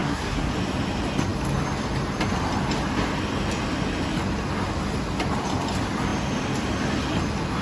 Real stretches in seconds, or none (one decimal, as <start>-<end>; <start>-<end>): 0.5-7.6